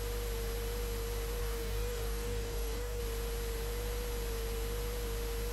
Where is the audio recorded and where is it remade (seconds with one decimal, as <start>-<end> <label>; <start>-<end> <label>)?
0.0-1.4 recorded; 1.4-3.0 remade; 3.0-5.5 recorded